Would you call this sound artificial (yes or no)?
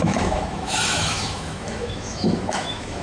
yes